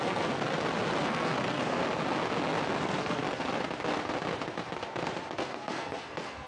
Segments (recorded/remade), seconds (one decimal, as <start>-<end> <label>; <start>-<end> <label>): 0.0-0.4 remade; 0.4-1.0 recorded; 1.0-1.8 remade; 1.8-2.8 recorded; 2.8-3.2 remade; 3.2-5.3 recorded; 5.3-6.5 remade